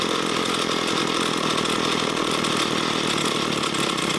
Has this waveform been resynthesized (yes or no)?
no